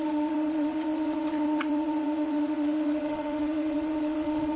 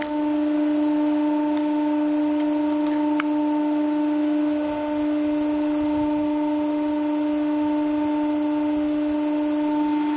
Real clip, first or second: second